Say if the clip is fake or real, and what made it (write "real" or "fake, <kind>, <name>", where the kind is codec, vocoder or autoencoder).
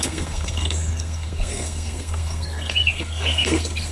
fake, codec, SNAC